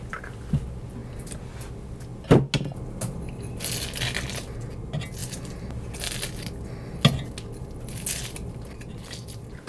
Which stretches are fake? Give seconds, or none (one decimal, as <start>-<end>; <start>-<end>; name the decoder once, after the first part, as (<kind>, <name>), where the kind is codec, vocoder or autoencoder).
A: none